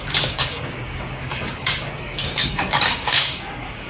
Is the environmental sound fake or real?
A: fake